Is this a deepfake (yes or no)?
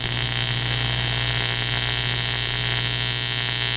no